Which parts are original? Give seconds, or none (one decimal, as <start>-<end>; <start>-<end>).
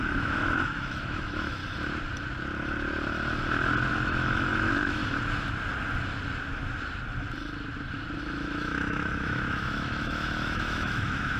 1.6-3.9; 5.0-8.2